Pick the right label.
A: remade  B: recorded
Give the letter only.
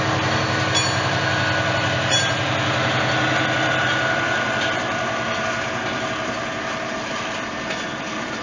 B